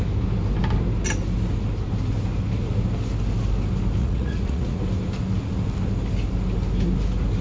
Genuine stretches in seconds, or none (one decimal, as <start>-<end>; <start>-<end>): 0.0-4.0; 4.8-7.4